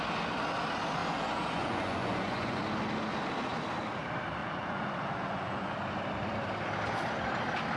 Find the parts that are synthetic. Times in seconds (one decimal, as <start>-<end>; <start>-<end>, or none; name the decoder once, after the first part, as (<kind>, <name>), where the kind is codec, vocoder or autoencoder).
1.0-2.6 (vocoder, Vocos); 4.4-5.7